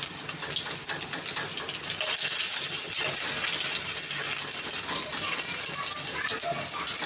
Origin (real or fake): real